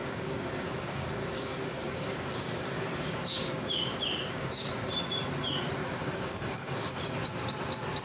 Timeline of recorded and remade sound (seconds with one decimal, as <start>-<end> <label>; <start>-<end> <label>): 0.0-4.7 remade; 4.7-5.8 recorded; 5.8-7.0 remade; 7.0-8.0 recorded